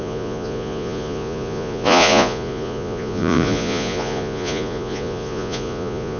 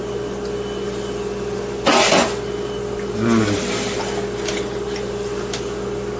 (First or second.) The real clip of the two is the second